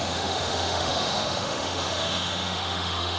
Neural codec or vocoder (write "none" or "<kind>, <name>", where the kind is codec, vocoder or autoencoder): autoencoder, DAC-VAE